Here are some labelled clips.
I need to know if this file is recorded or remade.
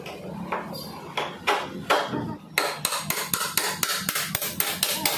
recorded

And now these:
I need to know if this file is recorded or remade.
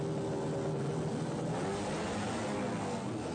recorded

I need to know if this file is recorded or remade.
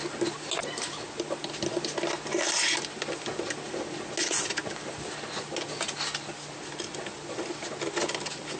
recorded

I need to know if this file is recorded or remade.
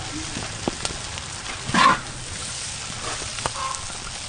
recorded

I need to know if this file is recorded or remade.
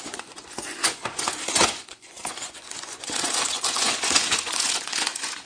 remade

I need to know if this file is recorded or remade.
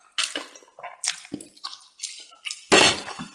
recorded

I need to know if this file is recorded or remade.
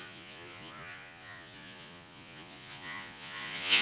remade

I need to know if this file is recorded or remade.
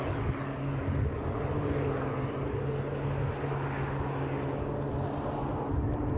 recorded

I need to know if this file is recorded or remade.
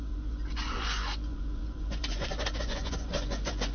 remade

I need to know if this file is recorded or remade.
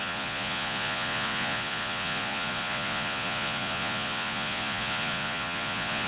remade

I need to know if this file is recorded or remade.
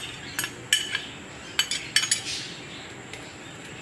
recorded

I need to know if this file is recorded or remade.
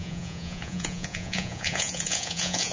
remade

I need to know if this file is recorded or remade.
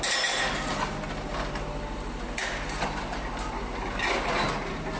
recorded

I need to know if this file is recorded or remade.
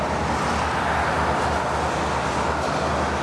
recorded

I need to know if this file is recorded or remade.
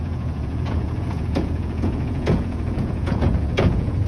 remade